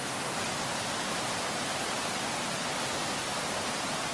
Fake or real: real